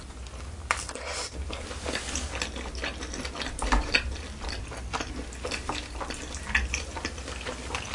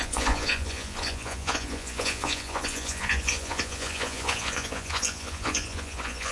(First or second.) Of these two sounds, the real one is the first